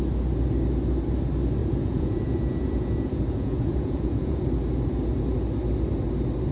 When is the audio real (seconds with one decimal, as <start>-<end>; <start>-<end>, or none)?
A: 0.0-1.6; 4.4-6.5